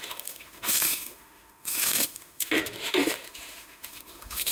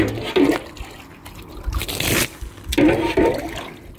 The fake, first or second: first